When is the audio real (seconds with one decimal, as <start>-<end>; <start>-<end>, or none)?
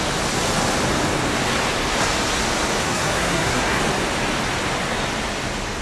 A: 0.0-2.8; 3.8-5.8